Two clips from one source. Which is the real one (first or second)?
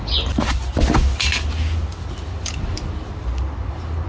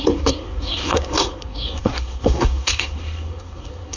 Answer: first